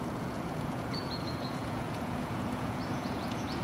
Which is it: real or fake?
fake